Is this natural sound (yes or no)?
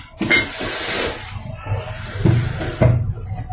yes